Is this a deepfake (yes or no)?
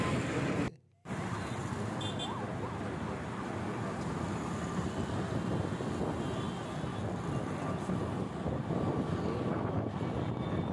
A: no